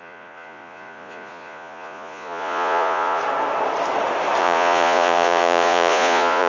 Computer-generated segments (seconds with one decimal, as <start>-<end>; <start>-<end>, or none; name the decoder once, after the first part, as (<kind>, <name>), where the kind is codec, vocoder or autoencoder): 0.0-3.2 (vocoder, Vocos); 4.4-6.5